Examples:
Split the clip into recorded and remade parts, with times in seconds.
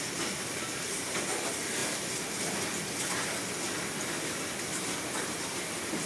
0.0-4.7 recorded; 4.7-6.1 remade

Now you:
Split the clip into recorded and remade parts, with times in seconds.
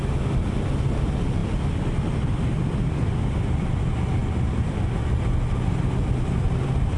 0.0-4.2 recorded; 4.2-5.0 remade; 5.0-7.0 recorded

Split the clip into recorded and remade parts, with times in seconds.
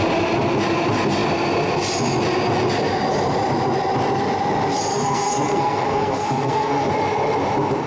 0.0-4.9 recorded; 4.9-6.9 remade; 6.9-7.9 recorded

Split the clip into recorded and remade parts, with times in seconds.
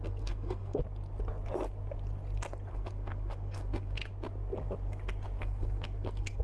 0.0-0.8 remade; 0.8-2.7 recorded; 2.7-4.0 remade; 4.0-5.4 recorded; 5.4-6.4 remade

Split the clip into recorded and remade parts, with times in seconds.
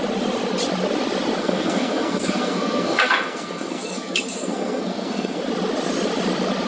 0.0-1.4 recorded; 1.4-5.4 remade; 5.4-6.7 recorded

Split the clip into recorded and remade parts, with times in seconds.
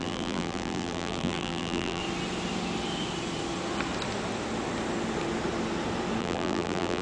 0.0-2.0 remade; 2.0-6.2 recorded; 6.2-7.0 remade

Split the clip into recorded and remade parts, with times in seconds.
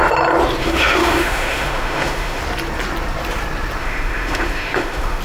0.0-0.6 recorded; 0.6-2.4 remade; 2.4-3.8 recorded; 3.8-5.2 remade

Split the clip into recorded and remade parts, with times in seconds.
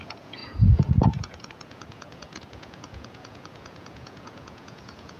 0.0-5.2 remade